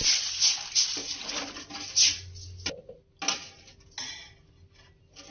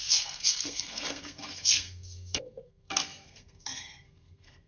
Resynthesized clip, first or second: second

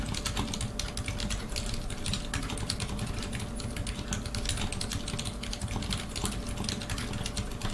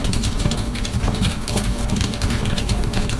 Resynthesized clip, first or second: second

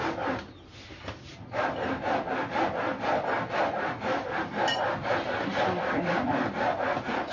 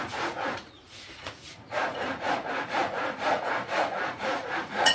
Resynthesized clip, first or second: second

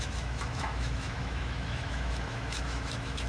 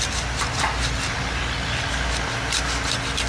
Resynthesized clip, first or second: first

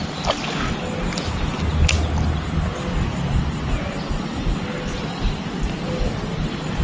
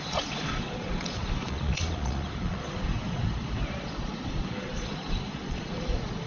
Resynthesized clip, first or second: second